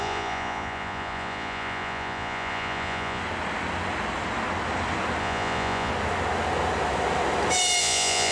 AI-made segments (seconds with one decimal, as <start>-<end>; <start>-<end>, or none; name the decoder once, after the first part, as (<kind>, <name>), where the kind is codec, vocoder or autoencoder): 0.0-3.2 (vocoder, Vocos); 5.2-5.9; 7.8-8.3

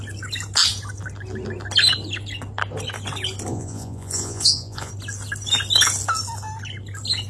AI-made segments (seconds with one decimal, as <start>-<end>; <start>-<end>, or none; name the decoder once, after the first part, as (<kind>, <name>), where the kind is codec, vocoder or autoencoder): 3.5-4.9 (vocoder, Vocos)

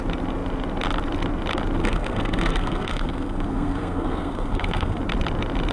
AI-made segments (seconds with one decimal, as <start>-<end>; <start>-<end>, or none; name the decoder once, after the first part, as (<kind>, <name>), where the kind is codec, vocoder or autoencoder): 1.8-5.0 (codec, SNAC)

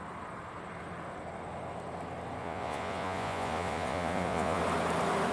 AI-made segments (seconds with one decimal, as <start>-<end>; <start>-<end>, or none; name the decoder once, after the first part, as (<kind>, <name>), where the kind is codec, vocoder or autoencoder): 2.4-4.6 (vocoder, Vocos)

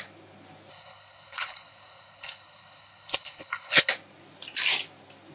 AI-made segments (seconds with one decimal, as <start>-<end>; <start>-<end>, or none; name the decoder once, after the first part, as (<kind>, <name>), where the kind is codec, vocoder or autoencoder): 0.7-3.9 (codec, HILCodec)